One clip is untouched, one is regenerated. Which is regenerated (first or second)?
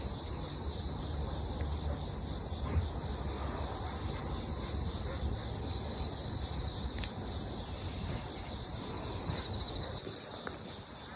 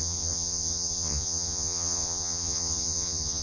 second